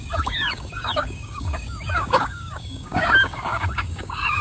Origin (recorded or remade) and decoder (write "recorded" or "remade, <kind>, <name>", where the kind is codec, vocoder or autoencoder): remade, codec, DAC